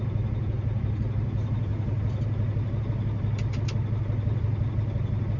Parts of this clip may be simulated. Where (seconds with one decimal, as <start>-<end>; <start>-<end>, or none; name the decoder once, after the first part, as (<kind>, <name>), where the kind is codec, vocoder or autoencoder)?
none